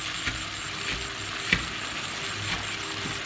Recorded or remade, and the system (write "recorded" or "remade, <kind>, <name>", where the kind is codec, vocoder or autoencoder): recorded